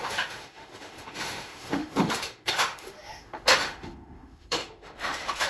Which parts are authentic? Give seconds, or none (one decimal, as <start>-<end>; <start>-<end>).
none